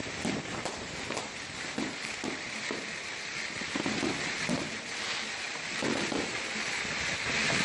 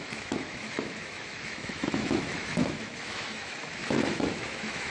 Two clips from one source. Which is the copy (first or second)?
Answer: second